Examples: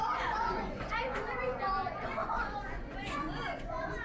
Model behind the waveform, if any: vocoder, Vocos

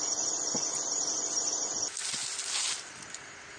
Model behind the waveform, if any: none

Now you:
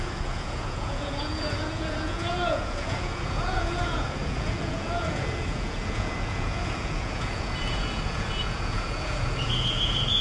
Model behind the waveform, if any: vocoder, Vocos